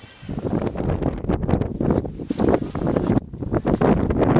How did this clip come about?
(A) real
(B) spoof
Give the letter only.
A